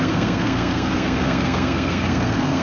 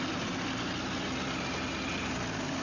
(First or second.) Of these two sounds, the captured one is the second